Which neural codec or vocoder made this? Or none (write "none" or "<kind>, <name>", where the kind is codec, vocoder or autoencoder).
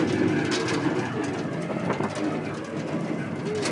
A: none